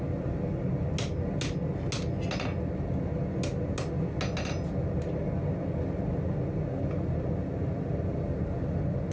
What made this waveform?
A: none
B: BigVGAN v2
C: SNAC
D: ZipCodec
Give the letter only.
A